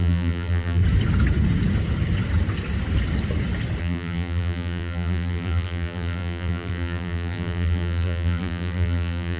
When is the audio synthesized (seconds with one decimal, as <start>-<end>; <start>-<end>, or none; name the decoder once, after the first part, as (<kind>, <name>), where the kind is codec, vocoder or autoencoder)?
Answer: 0.0-0.8 (vocoder, BigVGAN v2); 3.8-9.4